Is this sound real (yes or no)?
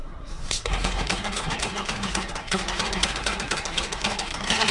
no